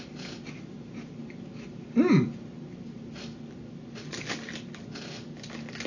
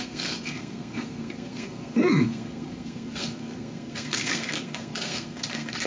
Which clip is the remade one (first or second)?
second